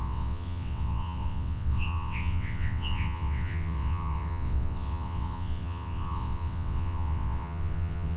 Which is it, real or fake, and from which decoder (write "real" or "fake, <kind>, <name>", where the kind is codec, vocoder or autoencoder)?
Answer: fake, vocoder, WaveNeXt